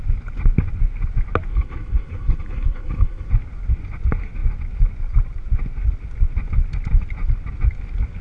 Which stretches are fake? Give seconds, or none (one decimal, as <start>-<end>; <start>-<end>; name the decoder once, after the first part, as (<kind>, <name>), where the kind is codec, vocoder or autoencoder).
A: 1.5-3.3 (codec, HILCodec)